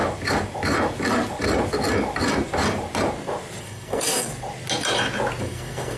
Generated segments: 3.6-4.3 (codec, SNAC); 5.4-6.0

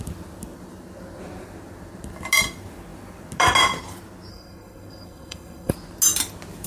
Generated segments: 4.3-5.7 (codec, SNAC)

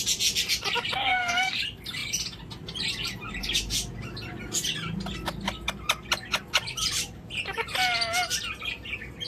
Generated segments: 1.0-1.6 (codec, SNAC)

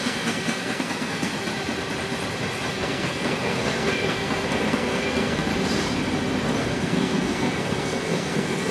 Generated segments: 0.0-1.3 (codec, SNAC); 2.7-5.5; 6.6-8.7

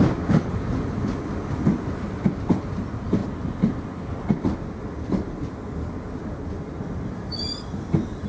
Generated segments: none

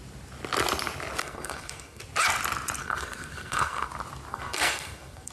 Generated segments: 1.2-2.0 (codec, SNAC); 2.8-3.9; 4.3-5.3

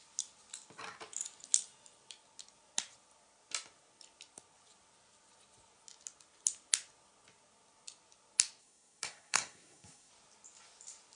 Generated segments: 8.6-10.1 (codec, SNAC)